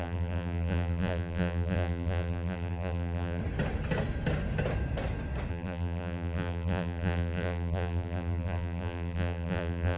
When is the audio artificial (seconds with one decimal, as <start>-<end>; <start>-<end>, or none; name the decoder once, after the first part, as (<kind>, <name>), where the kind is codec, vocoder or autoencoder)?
0.0-3.4 (vocoder, BigVGAN v2); 5.5-10.0